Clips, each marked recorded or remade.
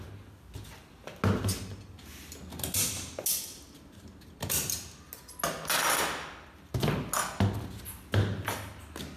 recorded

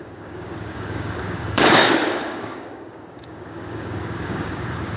remade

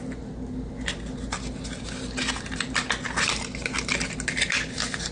recorded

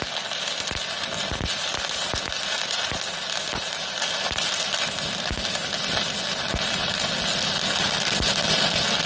recorded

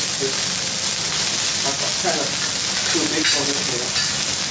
recorded